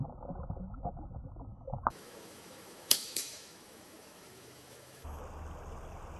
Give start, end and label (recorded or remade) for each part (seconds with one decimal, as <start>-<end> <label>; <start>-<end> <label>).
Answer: 0.0-1.5 recorded; 1.5-5.2 remade; 5.2-6.2 recorded